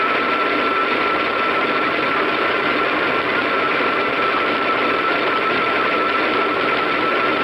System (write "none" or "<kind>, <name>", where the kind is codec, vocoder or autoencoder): none